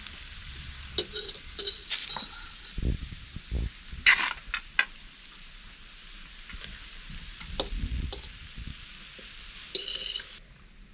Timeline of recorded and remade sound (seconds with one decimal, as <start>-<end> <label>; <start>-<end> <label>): 0.0-0.4 recorded; 0.4-2.6 remade; 2.6-10.9 recorded